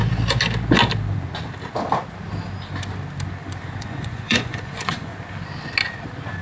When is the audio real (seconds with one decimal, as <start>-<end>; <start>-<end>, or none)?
0.0-3.8; 5.1-6.4